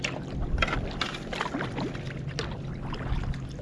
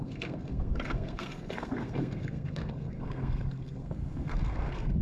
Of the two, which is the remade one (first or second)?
second